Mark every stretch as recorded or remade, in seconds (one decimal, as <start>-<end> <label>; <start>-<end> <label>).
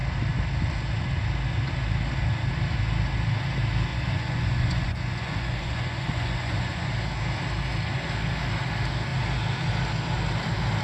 0.0-3.9 recorded; 3.9-6.9 remade; 6.9-10.8 recorded